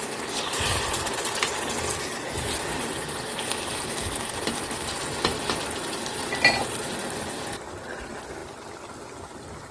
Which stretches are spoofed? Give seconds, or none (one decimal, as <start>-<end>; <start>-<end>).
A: none